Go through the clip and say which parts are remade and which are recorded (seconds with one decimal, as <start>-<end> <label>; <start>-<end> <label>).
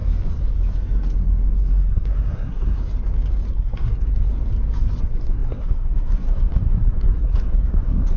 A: 0.0-1.6 recorded; 1.6-2.8 remade; 2.8-3.5 recorded; 3.5-4.3 remade; 4.3-5.0 recorded; 5.0-8.2 remade